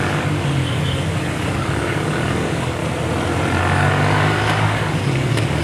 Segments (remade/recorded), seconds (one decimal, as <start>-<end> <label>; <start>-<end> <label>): 0.0-2.8 remade; 2.8-3.6 recorded; 3.6-5.6 remade